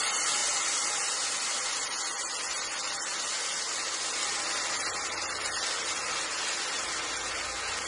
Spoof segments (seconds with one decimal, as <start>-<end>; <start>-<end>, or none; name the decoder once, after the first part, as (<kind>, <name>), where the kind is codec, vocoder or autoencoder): none